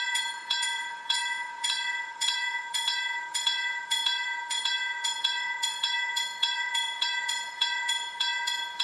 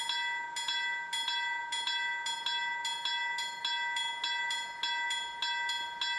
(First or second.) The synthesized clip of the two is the first